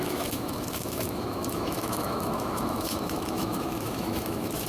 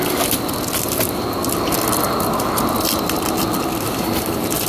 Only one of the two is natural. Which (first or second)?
second